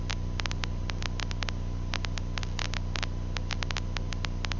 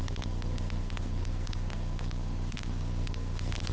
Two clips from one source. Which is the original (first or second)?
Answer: first